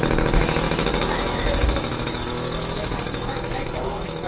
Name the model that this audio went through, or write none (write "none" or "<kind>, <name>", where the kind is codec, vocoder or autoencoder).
autoencoder, DAC-VAE